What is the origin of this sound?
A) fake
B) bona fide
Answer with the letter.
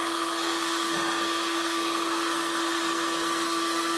A